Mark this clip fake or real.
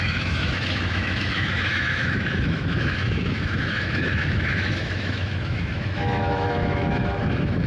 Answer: fake